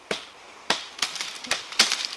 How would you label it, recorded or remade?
recorded